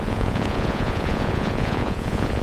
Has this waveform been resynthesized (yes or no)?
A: yes